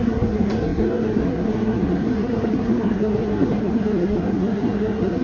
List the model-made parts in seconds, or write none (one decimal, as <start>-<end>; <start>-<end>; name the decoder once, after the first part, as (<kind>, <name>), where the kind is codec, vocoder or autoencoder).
0.0-5.2 (codec, SNAC)